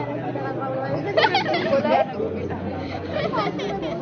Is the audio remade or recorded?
recorded